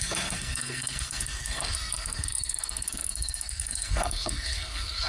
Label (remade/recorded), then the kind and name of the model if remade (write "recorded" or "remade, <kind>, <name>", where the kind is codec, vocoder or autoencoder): remade, codec, SNAC